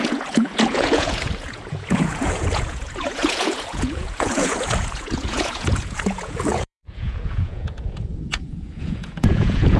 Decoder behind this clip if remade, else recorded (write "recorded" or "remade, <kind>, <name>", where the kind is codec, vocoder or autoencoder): remade, vocoder, Vocos